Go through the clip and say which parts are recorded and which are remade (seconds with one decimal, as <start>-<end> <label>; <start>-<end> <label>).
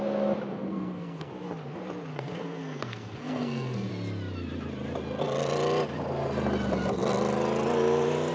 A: 0.0-0.5 recorded; 0.5-1.3 remade; 1.3-2.1 recorded; 2.1-3.9 remade; 3.9-8.3 recorded